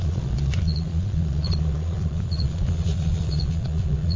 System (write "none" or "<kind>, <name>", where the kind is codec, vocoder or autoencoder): vocoder, Vocos